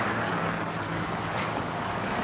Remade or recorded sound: remade